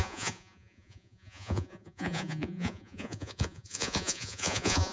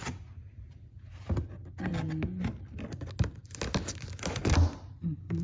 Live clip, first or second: second